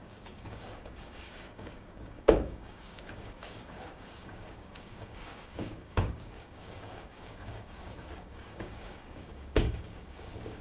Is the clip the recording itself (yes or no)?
no